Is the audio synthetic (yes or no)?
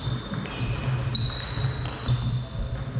no